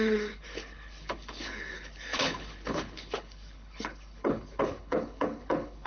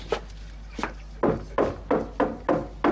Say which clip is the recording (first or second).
second